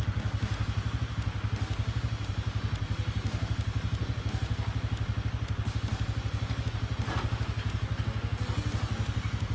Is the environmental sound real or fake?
real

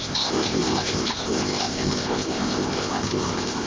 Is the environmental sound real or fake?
fake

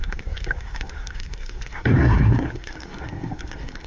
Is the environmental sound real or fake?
fake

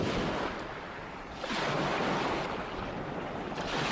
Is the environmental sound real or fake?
real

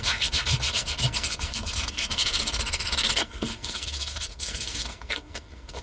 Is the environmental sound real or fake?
fake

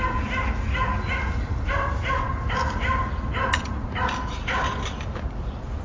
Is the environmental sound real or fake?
real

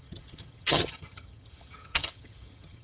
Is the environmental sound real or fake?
fake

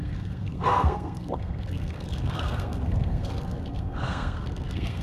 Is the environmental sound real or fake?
fake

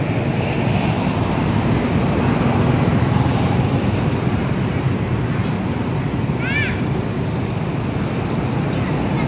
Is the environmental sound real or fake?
real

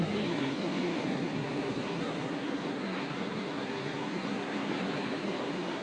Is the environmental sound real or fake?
fake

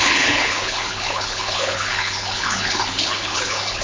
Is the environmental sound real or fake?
fake